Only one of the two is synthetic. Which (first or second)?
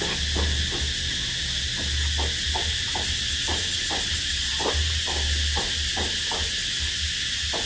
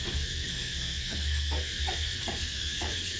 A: second